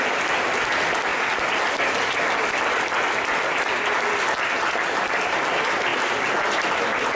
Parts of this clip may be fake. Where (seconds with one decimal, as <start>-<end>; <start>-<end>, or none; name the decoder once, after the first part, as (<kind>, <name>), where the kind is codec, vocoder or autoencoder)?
5.9-7.2 (vocoder, BigVGAN v2)